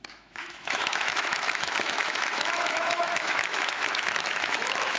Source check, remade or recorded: remade